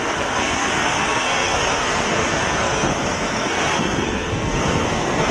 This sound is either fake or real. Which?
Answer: fake